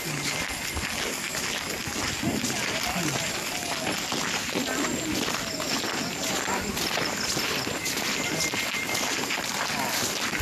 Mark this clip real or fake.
real